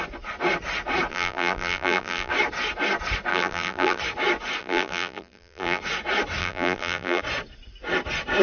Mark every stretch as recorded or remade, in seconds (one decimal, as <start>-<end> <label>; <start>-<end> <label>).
0.0-1.1 recorded; 1.1-2.3 remade; 2.3-3.3 recorded; 3.3-4.0 remade; 4.0-4.6 recorded; 4.6-5.8 remade; 5.8-6.4 recorded; 6.4-7.2 remade; 7.2-8.4 recorded